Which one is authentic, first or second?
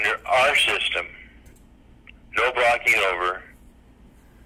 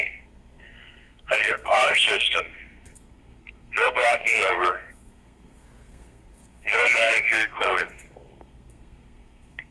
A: first